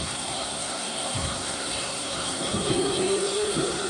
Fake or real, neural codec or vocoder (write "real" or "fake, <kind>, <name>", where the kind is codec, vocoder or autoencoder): fake, codec, SNAC